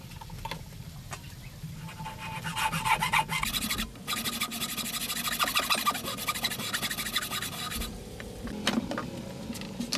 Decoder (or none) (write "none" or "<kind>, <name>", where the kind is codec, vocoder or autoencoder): none